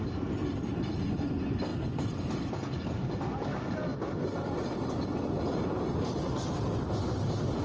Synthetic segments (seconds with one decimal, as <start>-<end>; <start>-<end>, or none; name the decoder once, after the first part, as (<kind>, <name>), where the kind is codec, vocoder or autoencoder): none